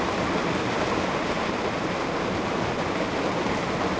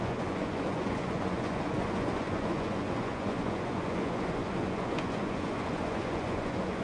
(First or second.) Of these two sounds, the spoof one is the second